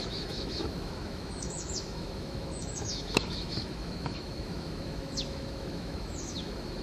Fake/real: fake